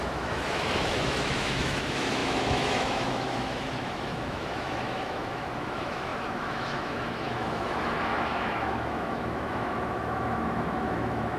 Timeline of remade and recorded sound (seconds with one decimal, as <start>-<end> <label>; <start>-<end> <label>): 0.0-11.4 remade